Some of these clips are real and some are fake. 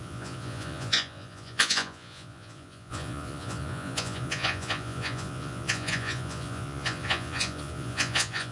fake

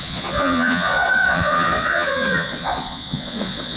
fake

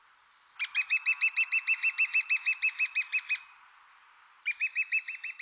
real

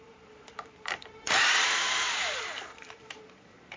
fake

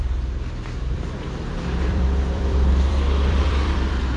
fake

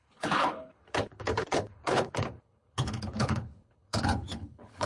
fake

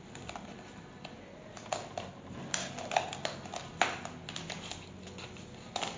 real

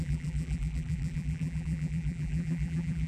fake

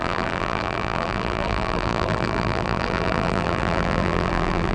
fake